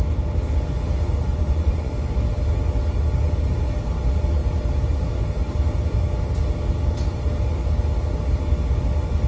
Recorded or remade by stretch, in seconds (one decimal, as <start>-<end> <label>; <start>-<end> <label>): 0.0-1.3 recorded; 1.3-1.9 remade; 1.9-9.3 recorded

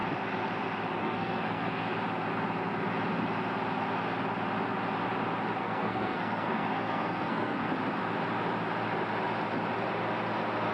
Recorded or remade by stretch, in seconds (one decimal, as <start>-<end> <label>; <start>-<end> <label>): 0.0-1.0 recorded; 1.0-1.8 remade; 1.8-5.6 recorded; 5.6-7.7 remade; 7.7-10.7 recorded